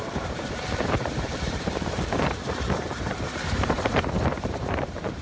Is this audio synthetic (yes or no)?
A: yes